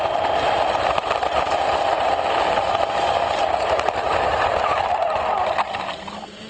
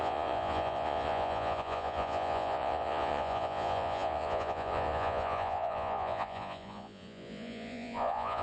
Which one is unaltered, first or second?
first